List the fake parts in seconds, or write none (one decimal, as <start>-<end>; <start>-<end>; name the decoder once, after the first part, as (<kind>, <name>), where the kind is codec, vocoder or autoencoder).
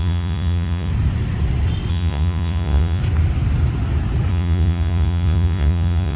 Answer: 0.0-0.9 (vocoder, Vocos); 1.9-3.0; 4.3-6.2